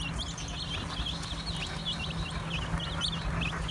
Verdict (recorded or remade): recorded